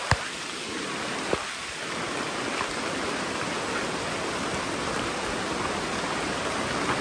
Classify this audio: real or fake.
real